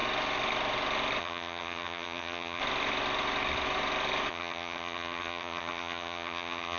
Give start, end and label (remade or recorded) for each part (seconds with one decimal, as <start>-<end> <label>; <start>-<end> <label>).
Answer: 0.0-1.2 recorded; 1.2-2.6 remade; 2.6-4.3 recorded; 4.3-6.8 remade